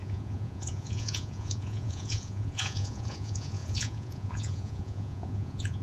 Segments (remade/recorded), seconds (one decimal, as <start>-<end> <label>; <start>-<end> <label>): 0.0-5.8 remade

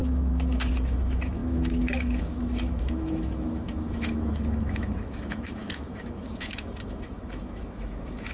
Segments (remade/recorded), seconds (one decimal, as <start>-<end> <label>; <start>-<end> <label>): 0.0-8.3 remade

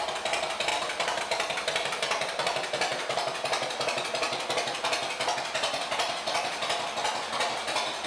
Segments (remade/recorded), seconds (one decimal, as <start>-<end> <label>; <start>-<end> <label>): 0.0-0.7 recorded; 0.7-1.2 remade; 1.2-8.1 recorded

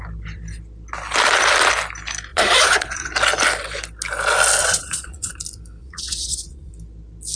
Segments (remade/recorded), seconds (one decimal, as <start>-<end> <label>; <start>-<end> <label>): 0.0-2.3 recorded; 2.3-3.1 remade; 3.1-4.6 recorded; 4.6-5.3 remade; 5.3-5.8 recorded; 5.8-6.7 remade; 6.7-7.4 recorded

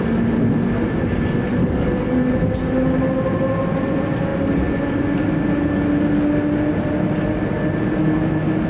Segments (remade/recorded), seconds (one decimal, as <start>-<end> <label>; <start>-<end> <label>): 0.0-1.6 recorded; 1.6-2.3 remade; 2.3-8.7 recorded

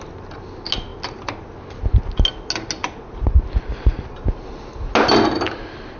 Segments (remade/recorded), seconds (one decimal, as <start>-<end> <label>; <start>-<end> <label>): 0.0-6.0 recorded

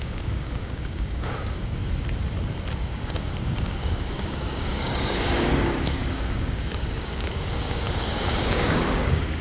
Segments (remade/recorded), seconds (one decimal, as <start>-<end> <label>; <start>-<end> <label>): 0.0-1.8 remade; 1.8-2.8 recorded; 2.8-9.4 remade

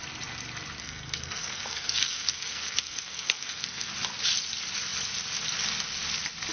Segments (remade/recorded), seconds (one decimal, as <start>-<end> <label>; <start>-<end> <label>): 0.0-0.8 recorded; 0.8-3.9 remade; 3.9-6.5 recorded